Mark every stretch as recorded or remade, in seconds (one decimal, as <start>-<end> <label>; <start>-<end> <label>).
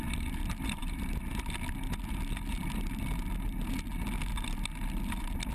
0.0-5.5 recorded